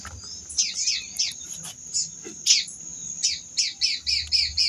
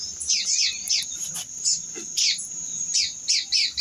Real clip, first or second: first